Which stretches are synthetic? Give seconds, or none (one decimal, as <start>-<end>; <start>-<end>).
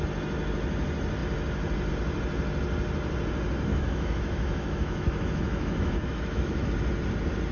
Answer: 3.7-6.7